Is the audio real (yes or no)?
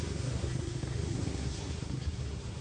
no